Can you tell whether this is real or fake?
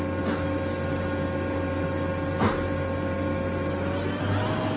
real